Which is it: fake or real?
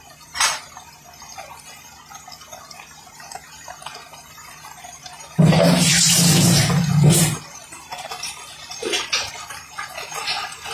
real